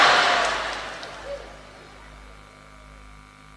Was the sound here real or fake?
real